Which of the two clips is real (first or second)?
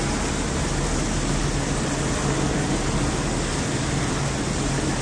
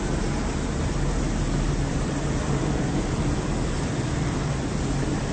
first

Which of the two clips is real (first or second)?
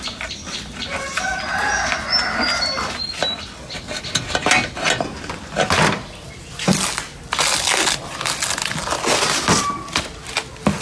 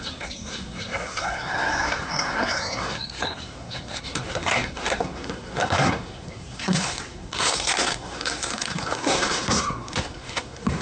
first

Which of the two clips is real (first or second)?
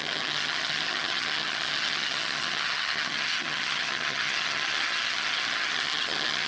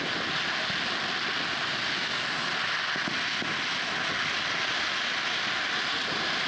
second